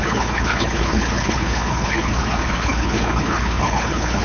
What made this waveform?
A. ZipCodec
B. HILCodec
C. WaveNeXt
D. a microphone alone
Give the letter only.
B